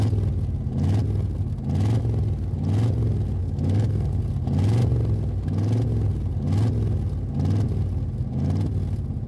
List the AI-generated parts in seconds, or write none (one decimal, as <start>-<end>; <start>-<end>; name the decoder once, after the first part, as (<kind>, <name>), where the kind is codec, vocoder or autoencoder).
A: 3.4-4.2 (codec, SNAC)